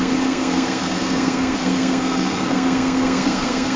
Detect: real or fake fake